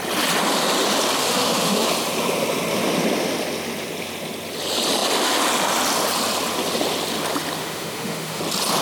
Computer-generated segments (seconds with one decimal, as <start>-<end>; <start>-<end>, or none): 1.2-1.9; 7.6-8.4